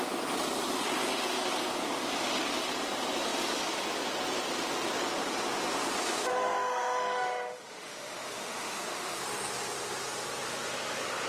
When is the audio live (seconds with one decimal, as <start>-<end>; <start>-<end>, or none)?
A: 0.0-6.3; 9.2-11.3

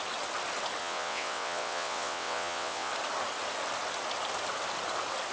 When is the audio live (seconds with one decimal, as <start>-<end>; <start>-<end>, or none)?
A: 0.0-0.8; 2.9-5.3

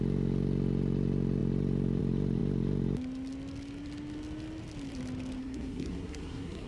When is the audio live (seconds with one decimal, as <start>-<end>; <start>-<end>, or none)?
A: 0.0-5.4

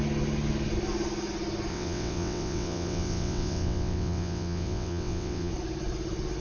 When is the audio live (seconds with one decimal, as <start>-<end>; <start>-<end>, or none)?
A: 0.0-1.7; 5.5-6.4

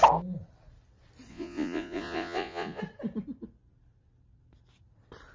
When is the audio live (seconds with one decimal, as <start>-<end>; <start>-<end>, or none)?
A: 0.0-1.3; 2.8-5.3

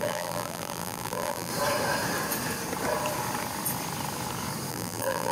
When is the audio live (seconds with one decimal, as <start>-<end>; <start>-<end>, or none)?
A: 1.5-4.7

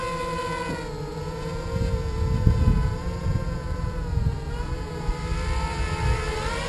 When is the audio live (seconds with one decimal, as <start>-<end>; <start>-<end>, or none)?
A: 0.0-1.1; 5.1-6.7

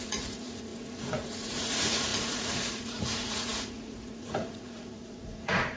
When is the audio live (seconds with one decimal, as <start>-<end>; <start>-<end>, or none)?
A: none